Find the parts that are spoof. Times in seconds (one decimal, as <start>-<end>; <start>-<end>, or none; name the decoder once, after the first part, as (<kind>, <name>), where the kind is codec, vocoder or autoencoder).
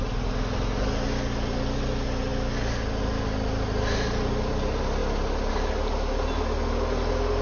none